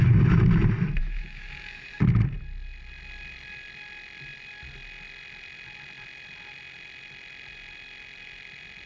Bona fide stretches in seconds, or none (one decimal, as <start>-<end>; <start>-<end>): 0.0-1.0; 2.0-8.9